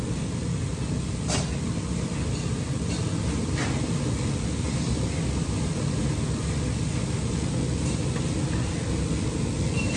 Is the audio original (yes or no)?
yes